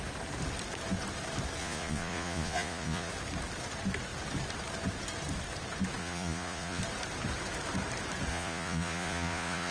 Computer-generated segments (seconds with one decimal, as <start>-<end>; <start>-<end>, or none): 1.6-3.1; 6.0-6.8; 8.3-9.7